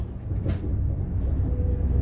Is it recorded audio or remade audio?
recorded